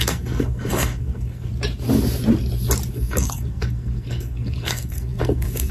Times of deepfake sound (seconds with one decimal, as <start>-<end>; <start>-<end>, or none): 0.0-1.5; 2.9-5.7